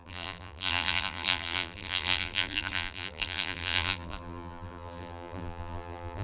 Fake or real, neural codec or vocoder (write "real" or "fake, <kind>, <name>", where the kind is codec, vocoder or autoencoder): fake, vocoder, BigVGAN v2